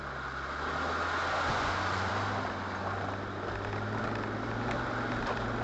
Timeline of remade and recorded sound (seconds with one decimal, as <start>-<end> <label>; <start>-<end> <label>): 0.0-1.5 recorded; 1.5-2.1 remade; 2.1-5.6 recorded